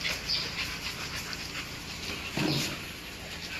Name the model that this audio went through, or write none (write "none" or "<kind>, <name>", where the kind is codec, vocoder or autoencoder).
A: none